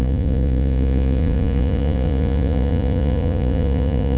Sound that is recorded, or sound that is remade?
remade